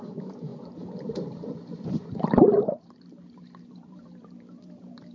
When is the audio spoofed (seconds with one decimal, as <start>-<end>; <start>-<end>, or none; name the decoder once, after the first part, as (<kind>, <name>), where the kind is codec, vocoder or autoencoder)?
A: 0.0-5.1 (vocoder, BigVGAN v2)